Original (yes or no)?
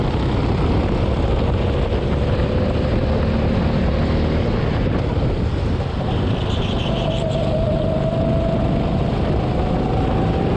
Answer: yes